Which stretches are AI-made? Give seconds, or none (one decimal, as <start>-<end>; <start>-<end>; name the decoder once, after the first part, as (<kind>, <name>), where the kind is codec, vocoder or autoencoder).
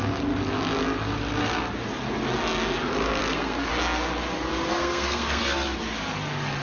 3.2-3.7 (codec, SNAC); 4.7-5.4